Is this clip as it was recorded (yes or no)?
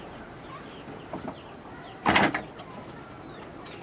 yes